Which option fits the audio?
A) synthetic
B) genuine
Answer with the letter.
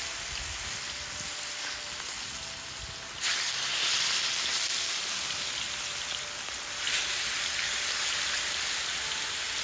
B